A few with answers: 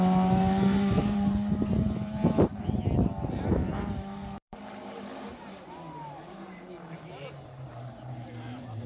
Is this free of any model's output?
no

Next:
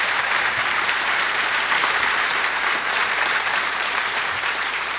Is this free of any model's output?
no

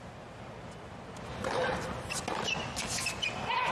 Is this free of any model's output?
yes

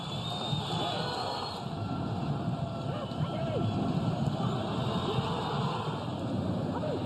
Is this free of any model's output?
yes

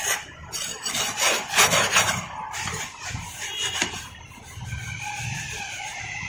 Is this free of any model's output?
no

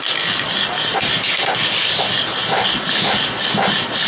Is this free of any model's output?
yes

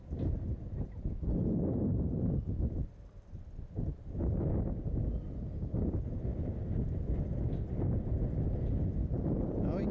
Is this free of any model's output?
no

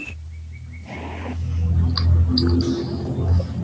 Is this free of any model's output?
yes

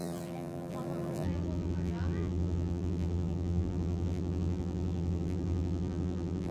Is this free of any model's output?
no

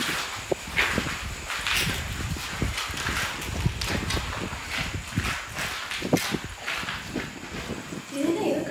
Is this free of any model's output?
yes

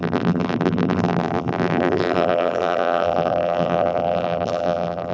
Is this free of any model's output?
no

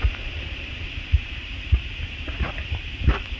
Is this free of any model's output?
no